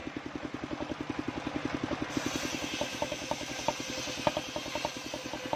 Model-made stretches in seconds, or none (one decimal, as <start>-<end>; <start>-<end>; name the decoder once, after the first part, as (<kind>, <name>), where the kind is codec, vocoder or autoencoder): 2.9-3.5 (autoencoder, DAC-VAE)

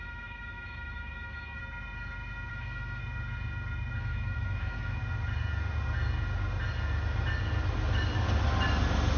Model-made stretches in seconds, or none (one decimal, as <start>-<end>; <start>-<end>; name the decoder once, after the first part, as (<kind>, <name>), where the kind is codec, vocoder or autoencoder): 0.0-1.6 (autoencoder, DAC-VAE); 2.5-3.0; 4.0-5.0

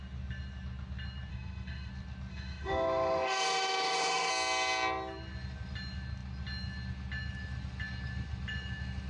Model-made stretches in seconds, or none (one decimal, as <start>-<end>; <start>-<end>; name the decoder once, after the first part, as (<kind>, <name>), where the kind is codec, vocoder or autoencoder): 1.3-1.9 (autoencoder, DAC-VAE); 2.3-4.3

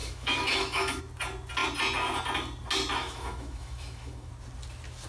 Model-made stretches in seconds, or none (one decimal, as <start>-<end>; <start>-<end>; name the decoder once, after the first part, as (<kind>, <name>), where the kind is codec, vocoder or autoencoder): 0.0-1.0 (autoencoder, DAC-VAE); 3.0-4.3

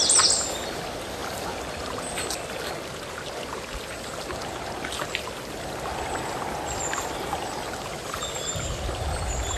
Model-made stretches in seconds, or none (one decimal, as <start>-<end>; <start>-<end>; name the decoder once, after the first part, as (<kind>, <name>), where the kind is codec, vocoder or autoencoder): none

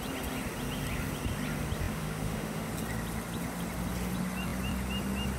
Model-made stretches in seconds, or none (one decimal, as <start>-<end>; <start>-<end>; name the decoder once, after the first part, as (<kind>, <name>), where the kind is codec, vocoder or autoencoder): 1.9-2.7 (autoencoder, DAC-VAE)

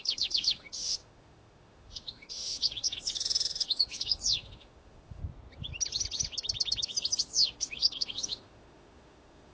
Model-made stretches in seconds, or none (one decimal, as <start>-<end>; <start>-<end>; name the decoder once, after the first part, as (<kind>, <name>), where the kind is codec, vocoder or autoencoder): 0.0-5.2 (autoencoder, DAC-VAE); 7.2-9.5